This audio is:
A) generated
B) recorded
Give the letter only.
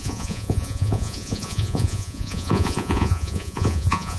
A